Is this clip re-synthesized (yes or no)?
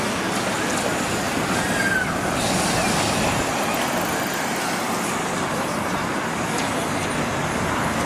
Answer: no